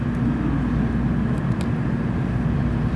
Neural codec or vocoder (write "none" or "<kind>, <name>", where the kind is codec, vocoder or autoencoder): none